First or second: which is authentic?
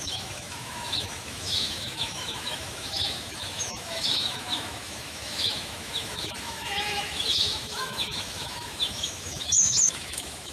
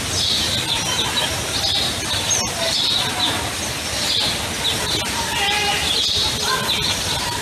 second